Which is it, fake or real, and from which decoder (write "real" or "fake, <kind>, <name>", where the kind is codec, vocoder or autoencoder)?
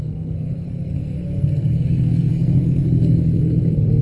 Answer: fake, codec, SNAC